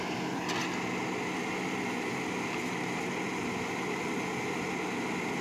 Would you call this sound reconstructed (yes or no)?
no